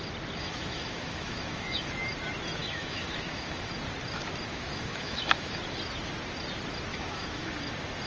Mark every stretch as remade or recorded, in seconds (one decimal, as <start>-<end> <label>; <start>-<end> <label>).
0.0-0.4 recorded; 0.4-1.9 remade; 1.9-2.6 recorded; 2.6-3.7 remade; 3.7-4.5 recorded; 4.5-5.6 remade; 5.6-6.9 recorded; 6.9-7.5 remade; 7.5-8.1 recorded